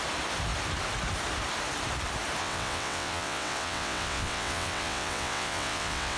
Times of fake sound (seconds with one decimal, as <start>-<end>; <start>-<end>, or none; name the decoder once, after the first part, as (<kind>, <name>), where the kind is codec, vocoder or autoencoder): 2.4-6.2 (vocoder, WaveNeXt)